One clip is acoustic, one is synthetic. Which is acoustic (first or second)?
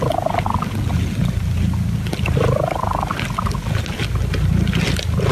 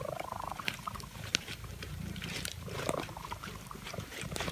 first